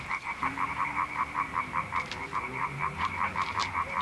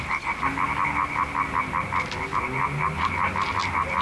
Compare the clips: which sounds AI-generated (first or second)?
first